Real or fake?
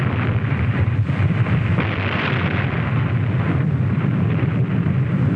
fake